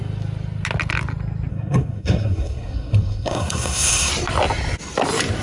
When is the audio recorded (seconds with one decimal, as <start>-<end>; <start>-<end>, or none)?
0.0-1.5; 4.1-5.4